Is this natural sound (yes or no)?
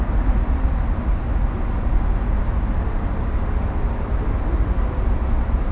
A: yes